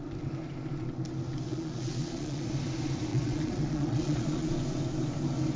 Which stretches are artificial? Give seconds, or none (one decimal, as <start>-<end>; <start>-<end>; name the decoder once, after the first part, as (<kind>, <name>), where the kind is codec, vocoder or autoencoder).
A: 1.5-2.5 (vocoder, Vocos); 3.1-4.5